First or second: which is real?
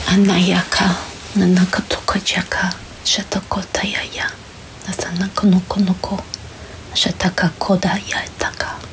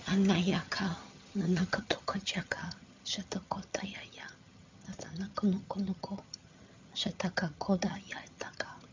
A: first